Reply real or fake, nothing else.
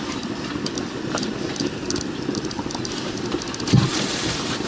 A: real